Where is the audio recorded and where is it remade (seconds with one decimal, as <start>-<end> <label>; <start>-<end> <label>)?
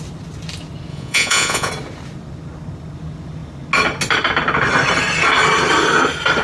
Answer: 0.0-0.9 recorded; 0.9-1.7 remade; 1.7-6.4 recorded